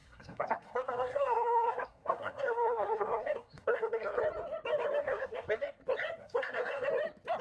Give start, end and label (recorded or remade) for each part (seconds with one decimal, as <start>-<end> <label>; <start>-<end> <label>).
0.0-4.2 remade; 4.2-5.0 recorded; 5.0-5.8 remade; 5.8-6.2 recorded; 6.2-6.9 remade; 6.9-7.4 recorded